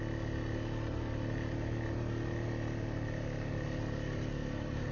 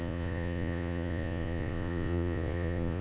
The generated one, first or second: second